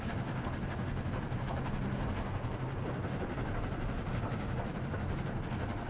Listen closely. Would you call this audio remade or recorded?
recorded